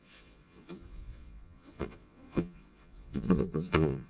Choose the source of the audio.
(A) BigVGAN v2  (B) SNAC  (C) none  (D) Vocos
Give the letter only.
D